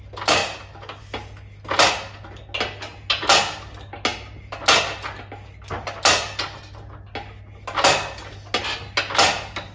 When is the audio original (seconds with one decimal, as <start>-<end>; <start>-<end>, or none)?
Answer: 0.0-9.7